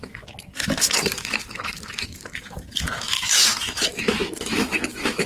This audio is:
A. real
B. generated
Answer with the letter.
B